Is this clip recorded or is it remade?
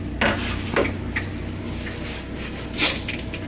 recorded